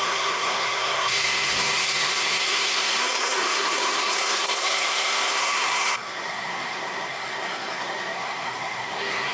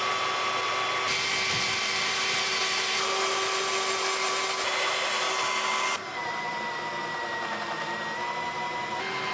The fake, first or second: first